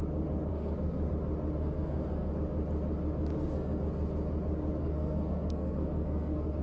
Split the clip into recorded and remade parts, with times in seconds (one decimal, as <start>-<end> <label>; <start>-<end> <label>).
0.0-0.5 recorded; 0.5-1.1 remade; 1.1-1.6 recorded; 1.6-2.3 remade; 2.3-3.3 recorded; 3.3-3.8 remade; 3.8-4.8 recorded; 4.8-6.6 remade